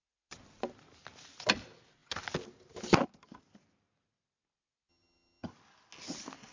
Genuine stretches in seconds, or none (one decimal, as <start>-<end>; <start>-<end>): 0.0-4.9; 5.5-6.5